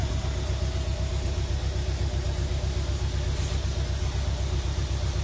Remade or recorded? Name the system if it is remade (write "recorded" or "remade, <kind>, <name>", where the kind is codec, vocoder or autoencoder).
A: recorded